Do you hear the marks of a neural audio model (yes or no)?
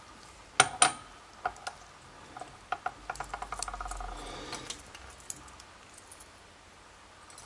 no